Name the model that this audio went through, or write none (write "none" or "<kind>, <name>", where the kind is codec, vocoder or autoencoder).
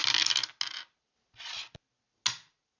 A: none